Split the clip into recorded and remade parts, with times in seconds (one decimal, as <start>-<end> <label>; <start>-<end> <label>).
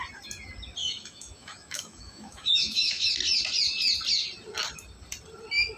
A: 0.0-0.8 recorded; 0.8-3.1 remade; 3.1-5.8 recorded